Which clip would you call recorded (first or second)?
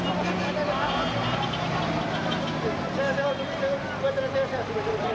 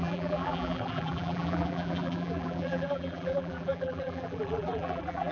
first